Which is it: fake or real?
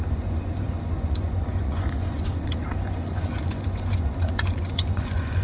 fake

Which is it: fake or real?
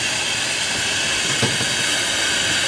real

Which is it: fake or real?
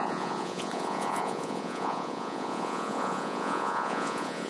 fake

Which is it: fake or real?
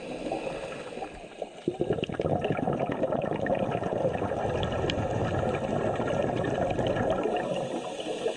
real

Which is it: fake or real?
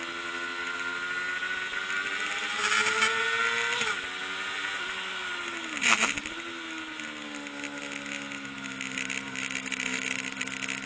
real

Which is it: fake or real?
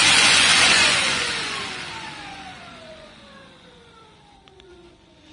fake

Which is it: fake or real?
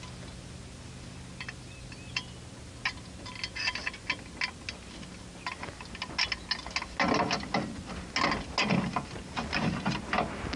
real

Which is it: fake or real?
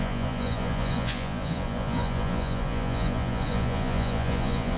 fake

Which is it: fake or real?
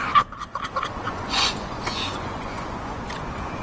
fake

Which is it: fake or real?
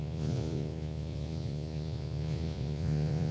fake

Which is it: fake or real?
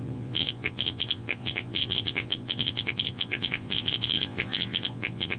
fake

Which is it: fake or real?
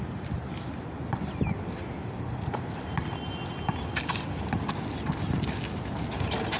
real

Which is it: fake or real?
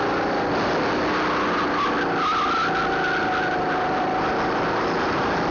real